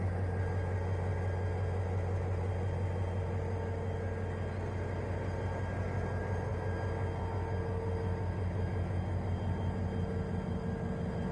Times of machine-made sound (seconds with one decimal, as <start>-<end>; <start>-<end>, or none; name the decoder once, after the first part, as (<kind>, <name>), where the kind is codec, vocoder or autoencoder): none